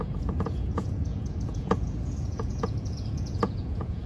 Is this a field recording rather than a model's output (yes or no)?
no